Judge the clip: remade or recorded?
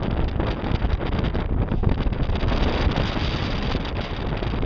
recorded